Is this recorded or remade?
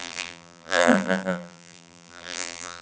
remade